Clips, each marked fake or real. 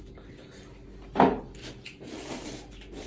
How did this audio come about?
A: real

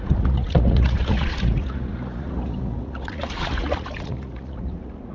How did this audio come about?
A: fake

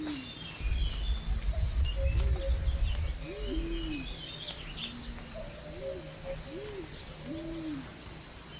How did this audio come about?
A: real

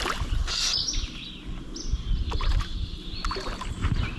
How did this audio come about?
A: real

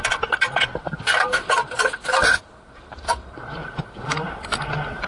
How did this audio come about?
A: real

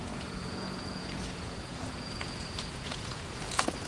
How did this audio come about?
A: fake